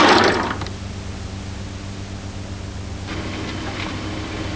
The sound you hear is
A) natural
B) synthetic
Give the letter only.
A